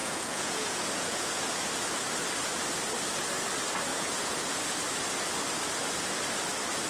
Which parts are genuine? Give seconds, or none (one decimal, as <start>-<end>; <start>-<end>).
1.4-3.9; 4.6-6.9